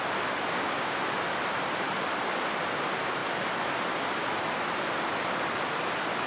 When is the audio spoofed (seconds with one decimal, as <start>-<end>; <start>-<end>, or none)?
none